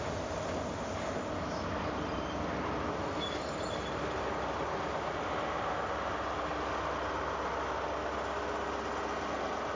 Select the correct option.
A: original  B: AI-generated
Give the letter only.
A